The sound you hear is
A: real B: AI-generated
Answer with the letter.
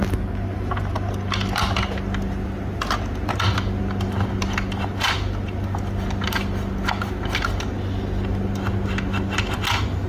A